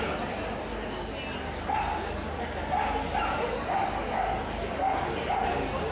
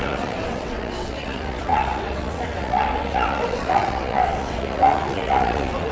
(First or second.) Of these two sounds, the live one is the first